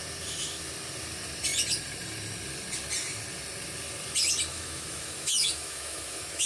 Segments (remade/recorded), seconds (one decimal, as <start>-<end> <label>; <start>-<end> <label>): 0.0-4.5 recorded; 4.5-6.5 remade